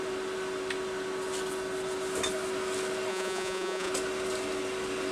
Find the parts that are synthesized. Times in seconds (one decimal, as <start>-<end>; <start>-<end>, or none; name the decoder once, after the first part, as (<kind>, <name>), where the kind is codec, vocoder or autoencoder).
3.1-3.9 (vocoder, Vocos)